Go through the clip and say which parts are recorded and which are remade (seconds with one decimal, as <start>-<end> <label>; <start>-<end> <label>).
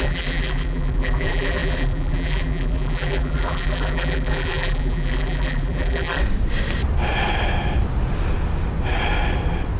0.0-6.2 remade; 6.2-9.8 recorded